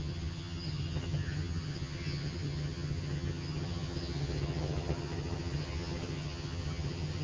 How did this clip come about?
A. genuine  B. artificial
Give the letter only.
B